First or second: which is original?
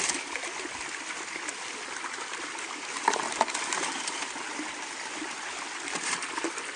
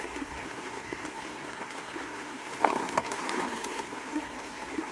first